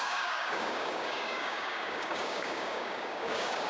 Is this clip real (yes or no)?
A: no